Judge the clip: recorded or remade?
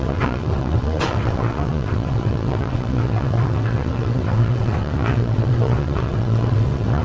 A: remade